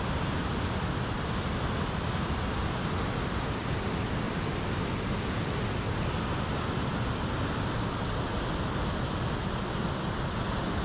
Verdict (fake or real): real